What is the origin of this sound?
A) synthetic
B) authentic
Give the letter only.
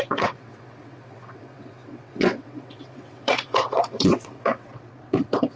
A